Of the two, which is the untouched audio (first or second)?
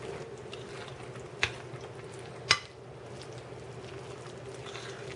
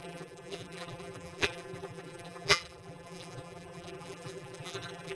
first